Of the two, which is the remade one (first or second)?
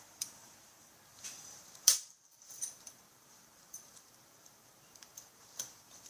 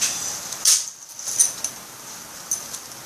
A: first